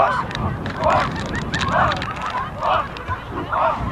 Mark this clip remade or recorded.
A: recorded